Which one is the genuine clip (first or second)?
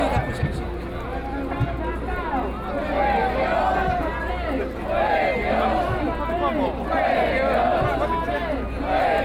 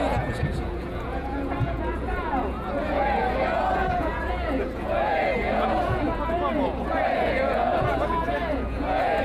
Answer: first